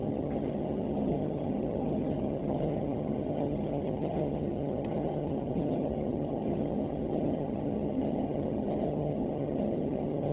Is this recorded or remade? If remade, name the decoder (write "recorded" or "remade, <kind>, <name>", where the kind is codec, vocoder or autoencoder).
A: remade, vocoder, HiFi-GAN